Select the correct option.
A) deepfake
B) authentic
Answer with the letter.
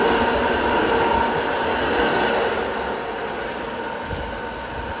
B